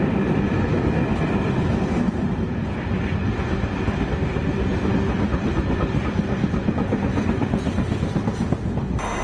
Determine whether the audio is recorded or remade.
recorded